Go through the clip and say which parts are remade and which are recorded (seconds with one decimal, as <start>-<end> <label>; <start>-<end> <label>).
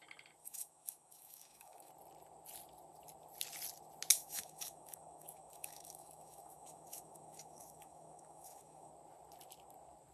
0.0-0.4 recorded; 0.4-1.9 remade; 1.9-4.1 recorded; 4.1-8.9 remade; 8.9-10.1 recorded